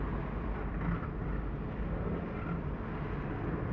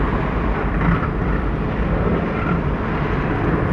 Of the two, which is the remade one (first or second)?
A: second